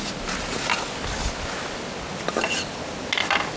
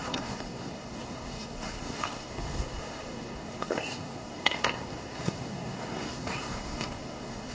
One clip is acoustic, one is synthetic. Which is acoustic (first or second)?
first